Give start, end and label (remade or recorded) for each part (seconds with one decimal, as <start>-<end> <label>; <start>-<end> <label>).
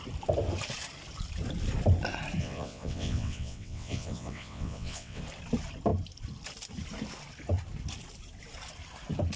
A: 0.0-2.4 recorded; 2.4-5.2 remade; 5.2-9.4 recorded